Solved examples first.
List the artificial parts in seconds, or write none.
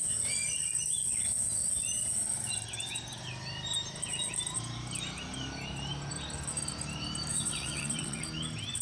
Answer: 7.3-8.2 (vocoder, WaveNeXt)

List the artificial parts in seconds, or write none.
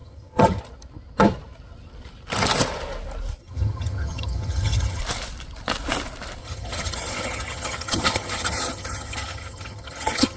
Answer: 0.0-0.6 (vocoder, HiFi-GAN); 3.4-5.0; 6.4-10.4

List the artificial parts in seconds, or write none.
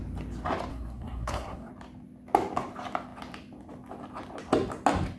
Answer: 0.7-1.7 (codec, SNAC)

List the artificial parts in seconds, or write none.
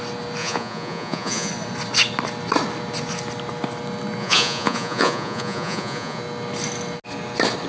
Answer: 0.4-1.5 (vocoder, Vocos); 4.2-6.2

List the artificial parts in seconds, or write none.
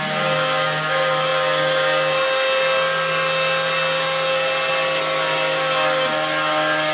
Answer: none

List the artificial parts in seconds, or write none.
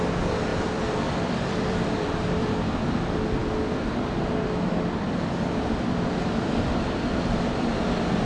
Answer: 0.5-2.5 (vocoder, BigVGAN v2)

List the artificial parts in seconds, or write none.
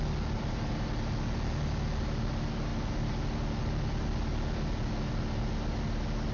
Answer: none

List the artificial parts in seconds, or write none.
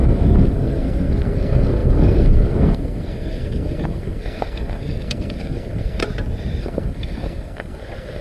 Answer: 0.0-6.0 (codec, SNAC); 6.6-8.2